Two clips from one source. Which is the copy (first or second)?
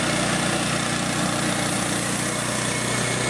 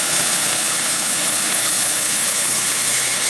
second